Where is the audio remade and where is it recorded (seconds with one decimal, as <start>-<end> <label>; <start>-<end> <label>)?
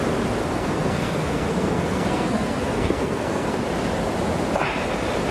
0.0-0.4 recorded; 0.4-3.6 remade; 3.6-5.3 recorded